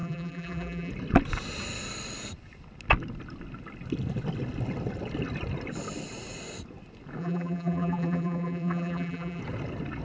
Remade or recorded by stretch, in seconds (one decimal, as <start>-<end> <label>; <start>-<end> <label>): 0.0-0.9 remade; 0.9-7.2 recorded; 7.2-9.4 remade; 9.4-10.0 recorded